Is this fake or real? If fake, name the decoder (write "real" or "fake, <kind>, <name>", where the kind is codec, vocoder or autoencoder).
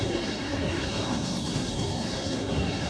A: fake, codec, SNAC